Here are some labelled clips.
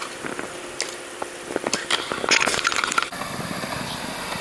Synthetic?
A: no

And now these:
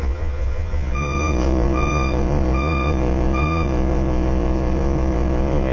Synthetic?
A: yes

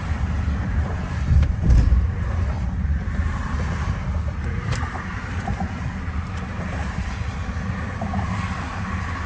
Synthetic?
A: yes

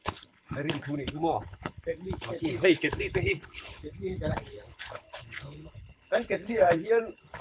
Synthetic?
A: yes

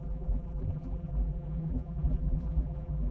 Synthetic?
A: yes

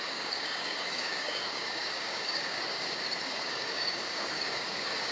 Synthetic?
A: yes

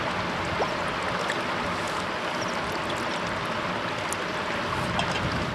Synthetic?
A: no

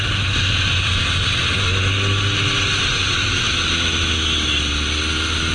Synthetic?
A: no